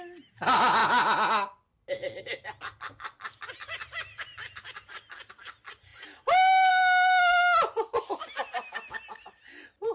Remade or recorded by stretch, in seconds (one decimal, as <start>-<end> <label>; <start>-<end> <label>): 0.0-9.9 recorded